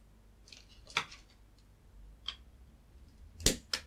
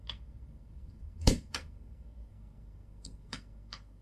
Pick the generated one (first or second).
second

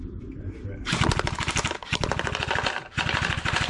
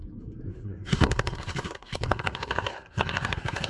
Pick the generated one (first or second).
second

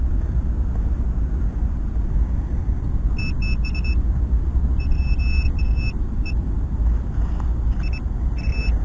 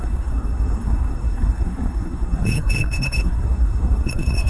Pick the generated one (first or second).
second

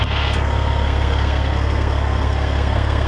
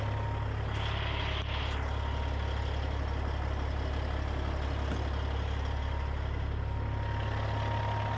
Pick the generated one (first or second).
first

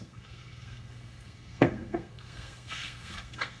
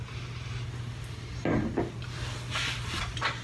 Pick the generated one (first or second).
first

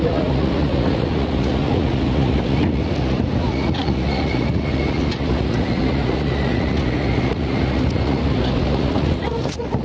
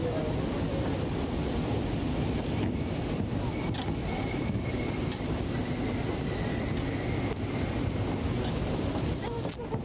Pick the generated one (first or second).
first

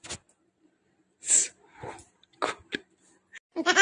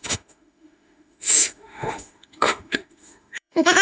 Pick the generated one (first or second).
second